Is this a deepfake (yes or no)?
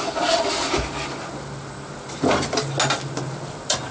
no